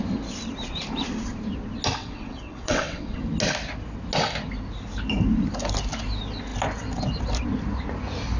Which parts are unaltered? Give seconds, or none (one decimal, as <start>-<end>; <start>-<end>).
0.0-2.0; 3.2-8.4